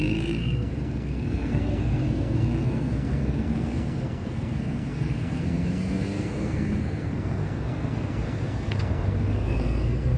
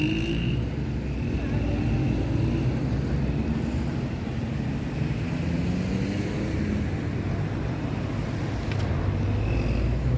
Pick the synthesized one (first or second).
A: first